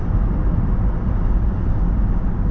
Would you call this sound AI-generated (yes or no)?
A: no